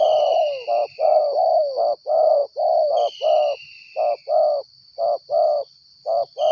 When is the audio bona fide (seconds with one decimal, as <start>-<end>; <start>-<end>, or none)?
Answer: 0.0-6.5